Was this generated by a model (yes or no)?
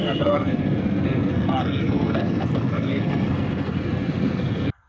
yes